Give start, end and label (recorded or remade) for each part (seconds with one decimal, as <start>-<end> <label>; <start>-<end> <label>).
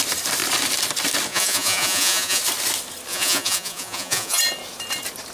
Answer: 0.0-1.3 recorded; 1.3-2.4 remade; 2.4-3.1 recorded; 3.1-4.4 remade; 4.4-5.3 recorded